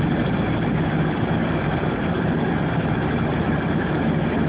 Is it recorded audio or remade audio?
recorded